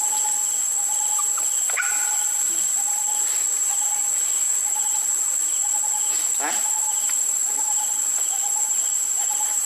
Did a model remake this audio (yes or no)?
no